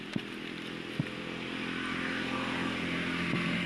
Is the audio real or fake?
real